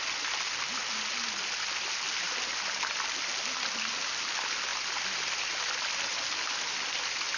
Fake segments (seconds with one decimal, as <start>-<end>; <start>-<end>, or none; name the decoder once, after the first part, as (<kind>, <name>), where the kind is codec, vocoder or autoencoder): none